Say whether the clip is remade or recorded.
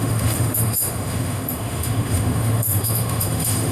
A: remade